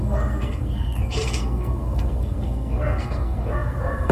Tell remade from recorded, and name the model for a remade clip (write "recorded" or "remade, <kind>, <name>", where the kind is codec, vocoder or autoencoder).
remade, codec, SNAC